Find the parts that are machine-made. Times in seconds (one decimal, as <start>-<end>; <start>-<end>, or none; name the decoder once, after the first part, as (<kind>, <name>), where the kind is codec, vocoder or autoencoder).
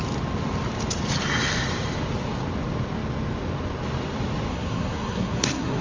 4.5-5.8 (codec, SNAC)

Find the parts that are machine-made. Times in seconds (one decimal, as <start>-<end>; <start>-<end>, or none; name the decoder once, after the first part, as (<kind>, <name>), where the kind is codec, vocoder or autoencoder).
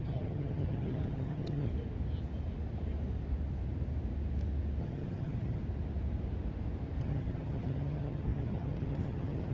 0.0-1.7 (vocoder, HiFi-GAN); 4.8-5.6; 7.0-9.5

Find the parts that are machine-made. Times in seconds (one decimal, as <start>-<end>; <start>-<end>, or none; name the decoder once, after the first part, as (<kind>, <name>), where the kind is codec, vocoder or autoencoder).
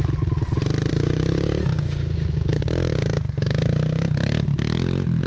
0.9-4.1 (codec, DAC)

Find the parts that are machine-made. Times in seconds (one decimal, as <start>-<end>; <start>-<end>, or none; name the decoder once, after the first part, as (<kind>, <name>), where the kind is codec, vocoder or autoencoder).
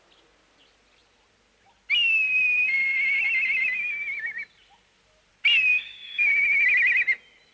5.7-6.3 (codec, DAC)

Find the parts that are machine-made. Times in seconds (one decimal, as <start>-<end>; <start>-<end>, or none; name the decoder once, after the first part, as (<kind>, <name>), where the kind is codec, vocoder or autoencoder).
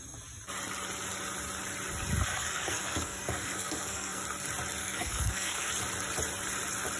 2.3-4.2 (codec, SNAC); 4.8-5.7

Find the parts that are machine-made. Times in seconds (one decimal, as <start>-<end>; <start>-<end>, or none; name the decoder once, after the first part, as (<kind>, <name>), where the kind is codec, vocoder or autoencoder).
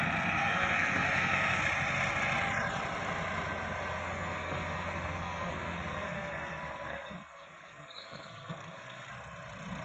0.4-1.6 (codec, SNAC); 4.0-9.1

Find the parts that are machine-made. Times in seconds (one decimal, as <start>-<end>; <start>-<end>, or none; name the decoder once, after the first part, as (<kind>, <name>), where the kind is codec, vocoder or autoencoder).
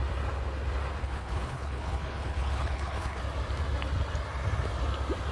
1.0-3.2 (codec, HILCodec)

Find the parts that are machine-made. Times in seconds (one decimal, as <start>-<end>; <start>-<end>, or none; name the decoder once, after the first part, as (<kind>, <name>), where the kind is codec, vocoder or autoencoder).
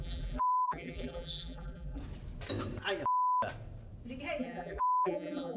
0.0-2.0 (vocoder, BigVGAN v2); 4.4-5.6